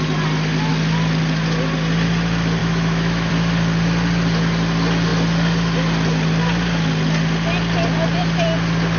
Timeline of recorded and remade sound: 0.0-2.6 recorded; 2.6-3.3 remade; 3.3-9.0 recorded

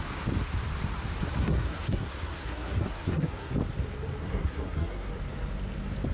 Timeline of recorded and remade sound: 0.0-1.4 recorded; 1.4-3.5 remade; 3.5-4.2 recorded; 4.2-5.1 remade; 5.1-6.1 recorded

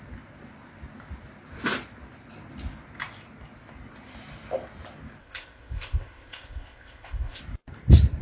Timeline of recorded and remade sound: 0.0-5.2 recorded; 5.2-7.4 remade; 7.4-8.2 recorded

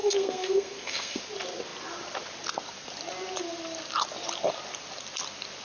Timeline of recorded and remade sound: 0.0-1.2 remade; 1.2-5.6 recorded